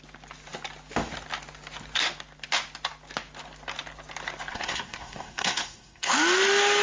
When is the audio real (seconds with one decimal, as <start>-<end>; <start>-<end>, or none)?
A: 0.0-4.5; 6.1-6.8

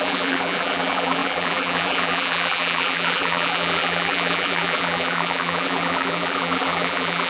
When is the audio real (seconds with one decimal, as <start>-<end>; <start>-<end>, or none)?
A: none